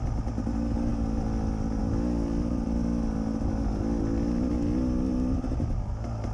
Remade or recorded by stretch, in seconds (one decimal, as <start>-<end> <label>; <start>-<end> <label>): 0.0-6.3 recorded